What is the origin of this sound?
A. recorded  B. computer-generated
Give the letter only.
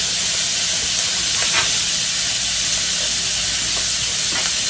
A